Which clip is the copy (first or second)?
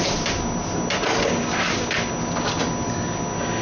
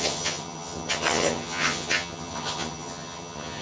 second